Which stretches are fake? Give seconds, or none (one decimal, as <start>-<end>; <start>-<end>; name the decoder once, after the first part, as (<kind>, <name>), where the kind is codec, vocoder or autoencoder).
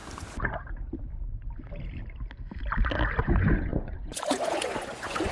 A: 3.2-5.3 (vocoder, Vocos)